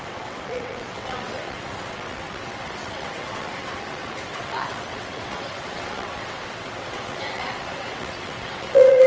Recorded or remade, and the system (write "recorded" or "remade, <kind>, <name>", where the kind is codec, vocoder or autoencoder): remade, vocoder, WaveNeXt